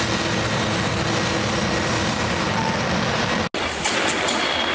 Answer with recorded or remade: recorded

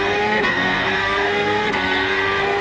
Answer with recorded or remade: remade